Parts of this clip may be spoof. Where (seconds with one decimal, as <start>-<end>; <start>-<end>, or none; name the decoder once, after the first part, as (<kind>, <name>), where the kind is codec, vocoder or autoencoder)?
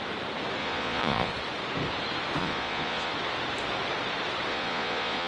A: 0.6-1.3 (vocoder, Vocos); 2.4-3.1; 4.5-5.3